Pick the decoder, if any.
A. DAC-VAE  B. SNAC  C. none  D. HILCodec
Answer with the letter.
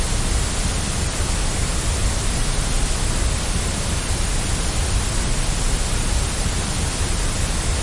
C